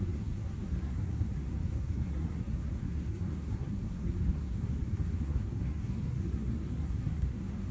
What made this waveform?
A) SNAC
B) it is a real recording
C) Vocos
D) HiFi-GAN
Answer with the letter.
A